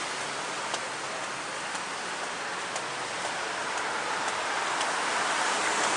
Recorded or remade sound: recorded